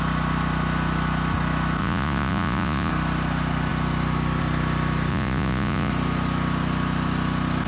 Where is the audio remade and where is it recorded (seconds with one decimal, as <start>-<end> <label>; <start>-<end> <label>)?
0.0-1.8 recorded; 1.8-2.9 remade; 2.9-5.1 recorded; 5.1-5.9 remade; 5.9-7.7 recorded